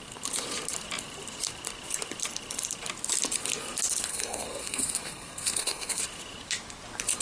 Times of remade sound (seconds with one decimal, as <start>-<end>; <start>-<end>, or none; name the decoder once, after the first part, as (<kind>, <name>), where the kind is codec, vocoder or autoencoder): 4.1-6.0 (codec, SNAC)

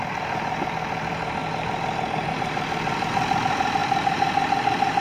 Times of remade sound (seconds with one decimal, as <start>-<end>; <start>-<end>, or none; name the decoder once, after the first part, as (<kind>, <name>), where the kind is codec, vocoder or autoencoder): 0.0-1.4 (vocoder, BigVGAN v2); 2.3-3.8

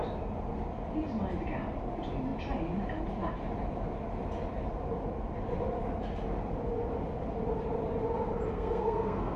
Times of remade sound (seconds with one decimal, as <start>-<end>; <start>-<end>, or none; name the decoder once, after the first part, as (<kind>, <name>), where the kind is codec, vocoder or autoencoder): 8.5-9.4 (codec, SNAC)

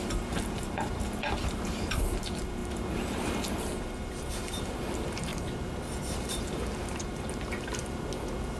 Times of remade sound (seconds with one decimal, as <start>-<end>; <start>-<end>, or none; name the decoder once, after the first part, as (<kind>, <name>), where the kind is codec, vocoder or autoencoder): 0.0-5.3 (vocoder, BigVGAN v2); 6.2-7.8

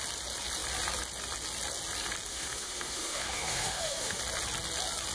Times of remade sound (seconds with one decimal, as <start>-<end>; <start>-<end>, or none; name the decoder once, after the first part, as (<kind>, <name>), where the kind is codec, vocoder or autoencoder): 2.3-4.2 (autoencoder, DAC-VAE)

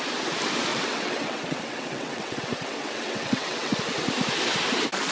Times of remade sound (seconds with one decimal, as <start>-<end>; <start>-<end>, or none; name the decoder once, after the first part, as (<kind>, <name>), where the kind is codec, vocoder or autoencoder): 0.7-3.8 (vocoder, WaveNeXt)

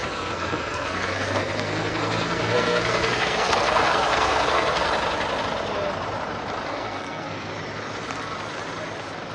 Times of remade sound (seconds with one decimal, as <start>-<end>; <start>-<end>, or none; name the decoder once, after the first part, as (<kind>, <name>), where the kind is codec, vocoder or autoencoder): 0.0-4.9 (codec, SNAC); 6.7-7.5

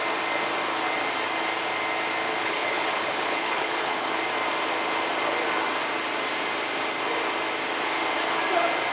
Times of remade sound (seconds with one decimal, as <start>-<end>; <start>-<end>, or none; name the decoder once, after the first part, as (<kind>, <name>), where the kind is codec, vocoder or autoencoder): 2.4-4.1 (codec, HILCodec)